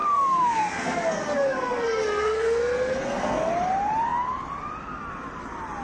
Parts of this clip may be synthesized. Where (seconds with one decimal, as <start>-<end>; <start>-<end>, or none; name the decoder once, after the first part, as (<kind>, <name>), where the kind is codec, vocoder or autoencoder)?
0.0-3.5 (codec, SNAC)